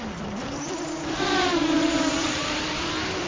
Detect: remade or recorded remade